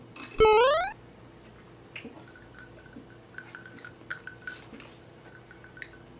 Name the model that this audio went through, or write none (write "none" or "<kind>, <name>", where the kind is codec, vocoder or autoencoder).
none